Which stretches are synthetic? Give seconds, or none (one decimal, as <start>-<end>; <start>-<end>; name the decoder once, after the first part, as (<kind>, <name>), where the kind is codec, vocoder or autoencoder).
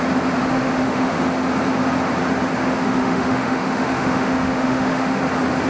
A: 0.4-1.2 (autoencoder, DAC-VAE); 2.6-5.2